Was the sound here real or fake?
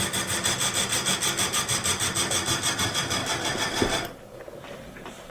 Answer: real